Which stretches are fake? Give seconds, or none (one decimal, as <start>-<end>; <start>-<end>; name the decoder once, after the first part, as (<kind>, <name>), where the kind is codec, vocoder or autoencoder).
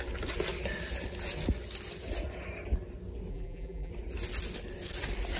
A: 3.3-3.9 (vocoder, BigVGAN v2)